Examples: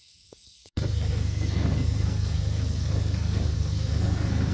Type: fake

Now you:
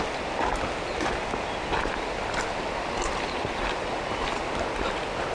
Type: real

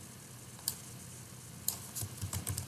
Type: real